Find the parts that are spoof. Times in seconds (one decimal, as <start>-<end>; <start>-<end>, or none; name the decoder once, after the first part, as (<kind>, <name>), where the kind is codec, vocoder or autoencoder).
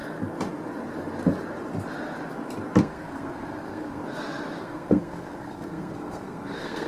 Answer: 2.8-4.0 (codec, SNAC); 4.6-6.9